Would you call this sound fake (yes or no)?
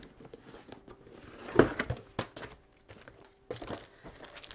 no